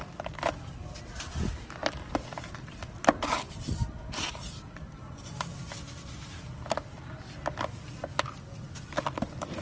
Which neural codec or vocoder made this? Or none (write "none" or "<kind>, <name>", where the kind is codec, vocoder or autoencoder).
none